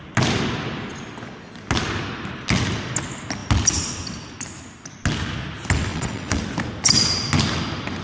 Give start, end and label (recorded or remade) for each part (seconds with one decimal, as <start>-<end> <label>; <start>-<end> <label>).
0.0-5.9 recorded; 5.9-6.4 remade; 6.4-8.0 recorded